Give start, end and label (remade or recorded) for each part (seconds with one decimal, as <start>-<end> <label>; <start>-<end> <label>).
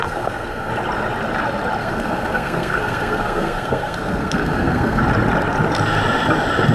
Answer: 0.0-0.7 remade; 0.7-1.8 recorded; 1.8-5.0 remade; 5.0-6.7 recorded